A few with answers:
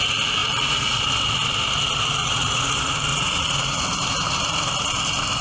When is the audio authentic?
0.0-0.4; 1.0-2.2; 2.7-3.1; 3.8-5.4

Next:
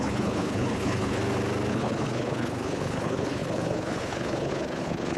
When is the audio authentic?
1.2-1.7

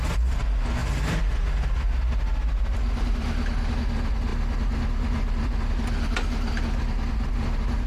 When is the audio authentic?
0.0-7.9

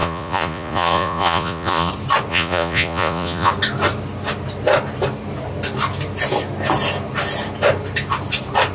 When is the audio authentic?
1.9-2.3; 3.5-8.7

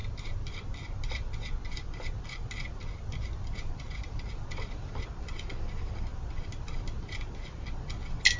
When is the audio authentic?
0.0-8.4

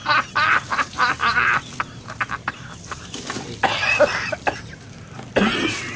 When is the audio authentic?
0.0-1.2; 4.8-6.0

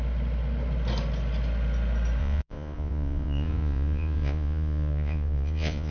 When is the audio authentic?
0.0-2.2